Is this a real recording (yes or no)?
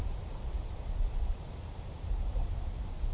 no